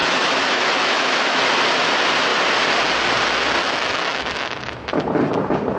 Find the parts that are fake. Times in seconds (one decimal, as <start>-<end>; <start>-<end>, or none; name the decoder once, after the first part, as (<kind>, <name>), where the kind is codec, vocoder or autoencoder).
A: 0.0-1.4 (autoencoder, DAC-VAE); 3.6-5.0